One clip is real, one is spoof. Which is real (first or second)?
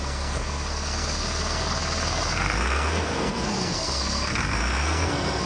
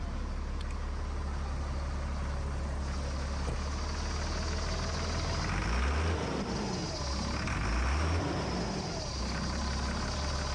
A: second